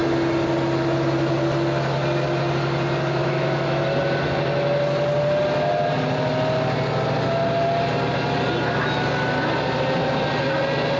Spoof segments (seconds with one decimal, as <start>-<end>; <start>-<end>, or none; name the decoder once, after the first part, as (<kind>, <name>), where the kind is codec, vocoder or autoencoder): 3.2-3.8 (autoencoder, DAC-VAE)